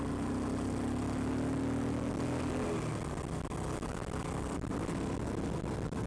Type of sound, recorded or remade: recorded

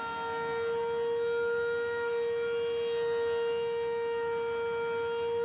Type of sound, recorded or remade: recorded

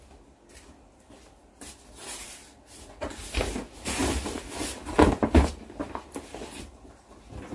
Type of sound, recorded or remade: recorded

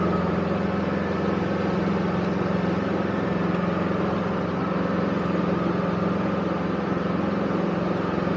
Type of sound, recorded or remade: recorded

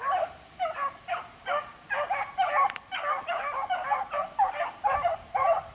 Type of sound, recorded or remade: recorded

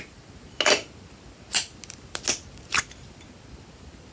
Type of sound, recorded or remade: recorded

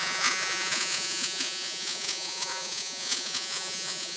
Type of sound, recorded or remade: remade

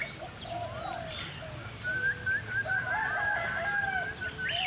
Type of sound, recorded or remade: recorded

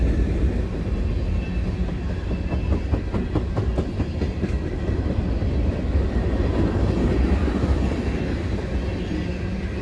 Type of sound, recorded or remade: recorded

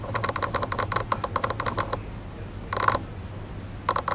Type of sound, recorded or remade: recorded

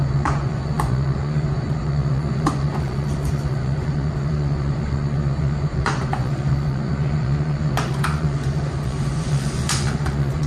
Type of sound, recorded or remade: remade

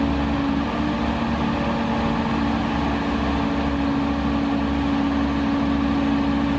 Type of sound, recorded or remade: recorded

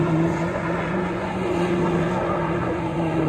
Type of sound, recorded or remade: remade